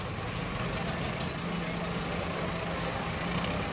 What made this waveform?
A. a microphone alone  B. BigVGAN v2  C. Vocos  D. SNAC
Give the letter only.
A